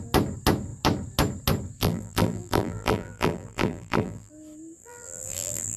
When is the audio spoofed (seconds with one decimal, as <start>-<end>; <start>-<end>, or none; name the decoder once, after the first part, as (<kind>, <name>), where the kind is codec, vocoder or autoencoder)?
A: 1.8-4.3 (vocoder, BigVGAN v2); 4.8-5.8